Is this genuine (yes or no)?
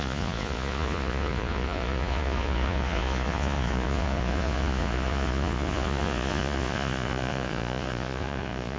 no